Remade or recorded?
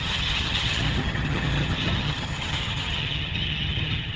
remade